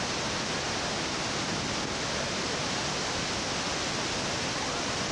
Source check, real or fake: real